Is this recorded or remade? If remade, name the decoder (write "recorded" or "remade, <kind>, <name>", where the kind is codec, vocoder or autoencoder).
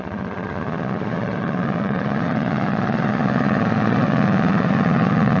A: remade, vocoder, Vocos